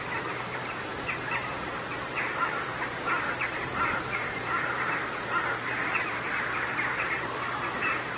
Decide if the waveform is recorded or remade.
remade